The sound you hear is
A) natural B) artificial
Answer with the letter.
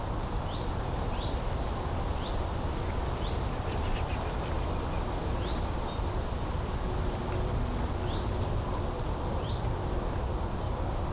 A